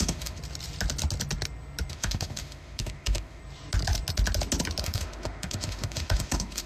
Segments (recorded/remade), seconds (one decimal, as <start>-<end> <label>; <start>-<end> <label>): 0.0-0.4 remade; 0.4-1.9 recorded; 1.9-3.4 remade; 3.4-4.8 recorded; 4.8-6.7 remade